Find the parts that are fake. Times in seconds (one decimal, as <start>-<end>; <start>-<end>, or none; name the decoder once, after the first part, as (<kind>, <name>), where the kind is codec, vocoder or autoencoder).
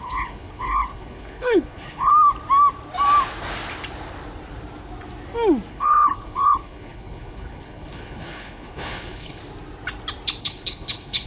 0.0-2.1 (codec, HILCodec); 5.7-9.4; 10.4-11.3